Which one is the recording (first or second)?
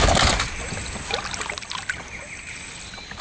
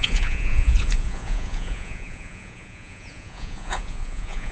first